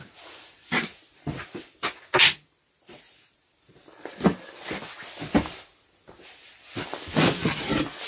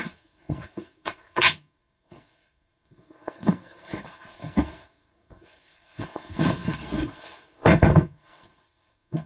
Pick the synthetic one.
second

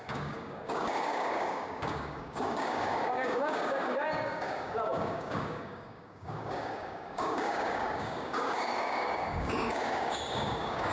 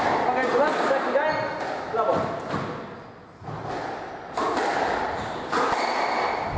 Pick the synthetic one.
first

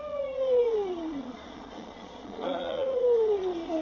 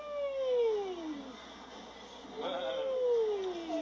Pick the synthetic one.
first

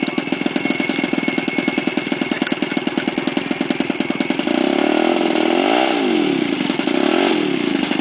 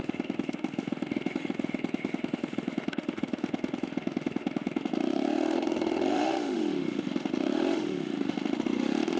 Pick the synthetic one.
second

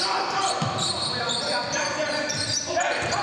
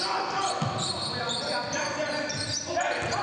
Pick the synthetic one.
first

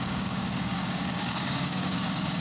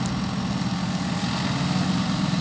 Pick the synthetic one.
first